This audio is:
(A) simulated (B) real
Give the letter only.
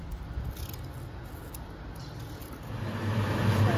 B